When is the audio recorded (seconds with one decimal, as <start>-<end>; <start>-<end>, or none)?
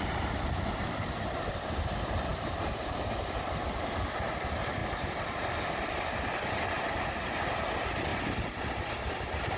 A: 0.0-9.6